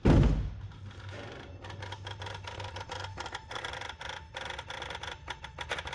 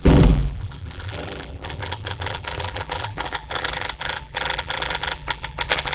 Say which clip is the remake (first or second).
second